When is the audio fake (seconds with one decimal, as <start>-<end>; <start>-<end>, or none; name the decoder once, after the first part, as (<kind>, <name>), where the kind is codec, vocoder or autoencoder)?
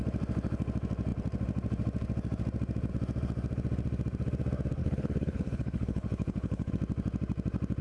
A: 4.8-6.7 (codec, HILCodec)